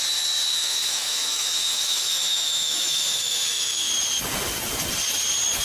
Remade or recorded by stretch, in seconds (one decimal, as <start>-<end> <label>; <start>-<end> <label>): 0.0-0.5 recorded; 0.5-3.9 remade; 3.9-5.6 recorded